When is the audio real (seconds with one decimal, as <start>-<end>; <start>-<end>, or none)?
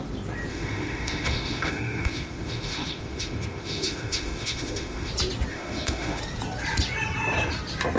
0.0-0.5; 5.1-5.5; 6.2-8.0